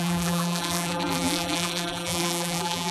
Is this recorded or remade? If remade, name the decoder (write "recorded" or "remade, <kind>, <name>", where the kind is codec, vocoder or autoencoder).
remade, vocoder, BigVGAN v2